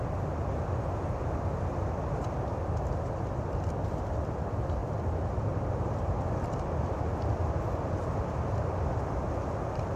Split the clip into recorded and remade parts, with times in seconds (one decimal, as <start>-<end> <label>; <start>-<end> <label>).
0.0-10.0 recorded